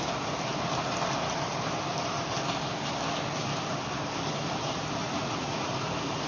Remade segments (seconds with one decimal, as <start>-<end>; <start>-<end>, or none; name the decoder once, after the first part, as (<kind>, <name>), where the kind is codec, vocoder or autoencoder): 5.0-5.7 (vocoder, Vocos)